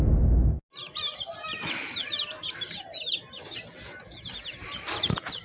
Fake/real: real